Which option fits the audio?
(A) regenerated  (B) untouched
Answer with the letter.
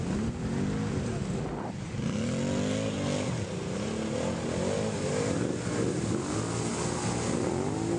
B